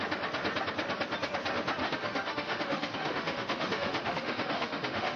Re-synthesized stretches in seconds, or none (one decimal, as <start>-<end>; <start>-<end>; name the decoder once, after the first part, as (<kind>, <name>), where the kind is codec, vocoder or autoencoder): 1.8-5.2 (autoencoder, DAC-VAE)